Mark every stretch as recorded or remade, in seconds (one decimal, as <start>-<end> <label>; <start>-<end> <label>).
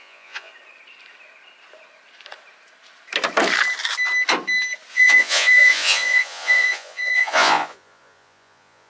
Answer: 0.0-0.5 remade; 0.5-4.9 recorded; 4.9-8.9 remade